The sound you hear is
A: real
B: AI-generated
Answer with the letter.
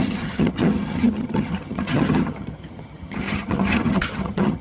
B